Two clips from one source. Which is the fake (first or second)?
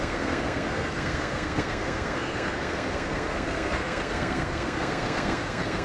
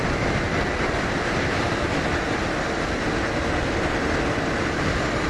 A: first